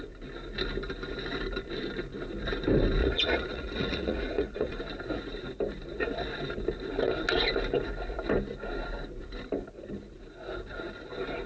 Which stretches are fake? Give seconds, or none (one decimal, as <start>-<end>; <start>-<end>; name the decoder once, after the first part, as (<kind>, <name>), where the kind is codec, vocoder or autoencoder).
3.0-4.8 (vocoder, Vocos)